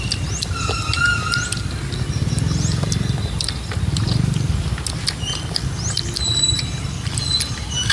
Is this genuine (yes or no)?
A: yes